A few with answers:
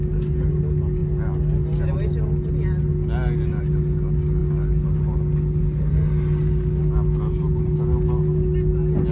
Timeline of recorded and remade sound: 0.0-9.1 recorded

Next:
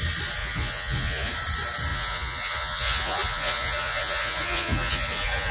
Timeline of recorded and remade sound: 0.0-0.4 recorded; 0.4-1.3 remade; 1.3-1.9 recorded; 1.9-5.5 remade

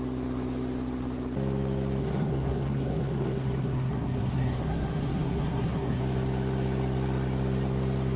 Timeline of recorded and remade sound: 0.0-2.0 recorded; 2.0-6.0 remade; 6.0-8.2 recorded

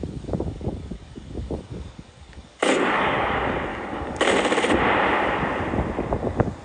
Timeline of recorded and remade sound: 0.0-3.3 remade; 3.3-3.7 recorded; 3.7-4.2 remade; 4.2-6.6 recorded

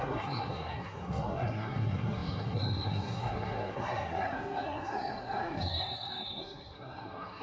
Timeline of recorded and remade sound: 0.0-7.4 remade

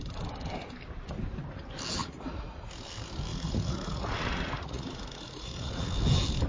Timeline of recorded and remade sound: 0.0-2.0 recorded; 2.0-2.6 remade; 2.6-3.3 recorded; 3.3-5.9 remade; 5.9-6.5 recorded

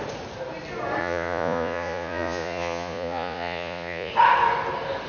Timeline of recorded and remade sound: 0.0-1.0 recorded; 1.0-4.1 remade; 4.1-5.1 recorded

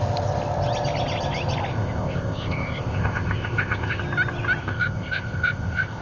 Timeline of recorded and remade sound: 0.0-1.7 recorded; 1.7-4.0 remade; 4.0-4.6 recorded; 4.6-6.0 remade